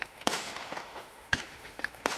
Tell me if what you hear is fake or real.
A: fake